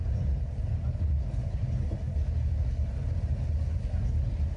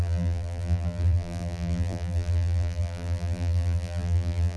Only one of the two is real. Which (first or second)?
first